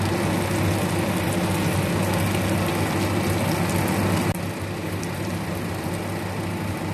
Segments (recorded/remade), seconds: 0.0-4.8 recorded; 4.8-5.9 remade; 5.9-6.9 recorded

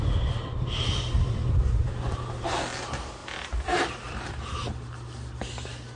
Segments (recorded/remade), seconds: 0.0-3.2 recorded; 3.2-4.5 remade; 4.5-6.0 recorded